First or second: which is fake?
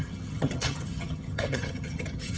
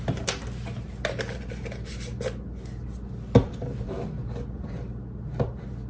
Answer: first